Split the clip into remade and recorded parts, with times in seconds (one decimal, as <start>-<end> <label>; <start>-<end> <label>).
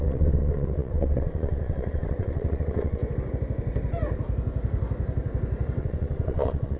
0.0-3.0 remade; 3.0-5.8 recorded; 5.8-6.8 remade